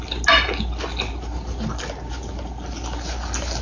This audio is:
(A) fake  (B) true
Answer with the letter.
B